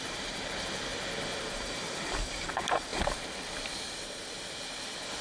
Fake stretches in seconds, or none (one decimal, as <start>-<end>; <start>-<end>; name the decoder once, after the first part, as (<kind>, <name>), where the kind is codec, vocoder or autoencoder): 0.0-0.9 (vocoder, BigVGAN v2); 1.4-2.9